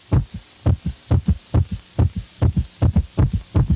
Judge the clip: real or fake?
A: real